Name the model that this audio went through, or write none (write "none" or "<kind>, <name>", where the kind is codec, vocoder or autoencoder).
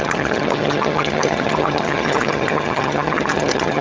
vocoder, HiFi-GAN